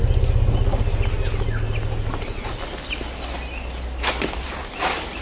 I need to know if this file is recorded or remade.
recorded